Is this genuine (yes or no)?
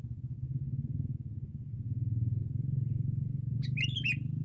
yes